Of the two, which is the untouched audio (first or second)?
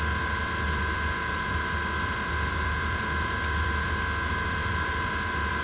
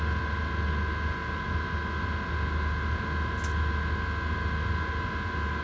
second